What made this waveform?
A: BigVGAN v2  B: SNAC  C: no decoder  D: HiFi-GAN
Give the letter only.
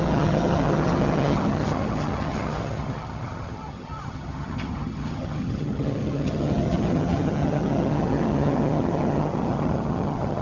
D